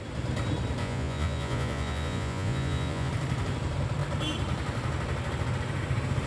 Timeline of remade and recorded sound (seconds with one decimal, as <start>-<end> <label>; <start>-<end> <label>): 0.0-0.8 recorded; 0.8-3.1 remade; 3.1-6.3 recorded